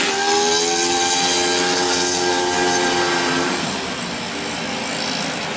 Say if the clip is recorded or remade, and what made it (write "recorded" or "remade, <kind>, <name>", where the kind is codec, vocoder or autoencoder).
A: recorded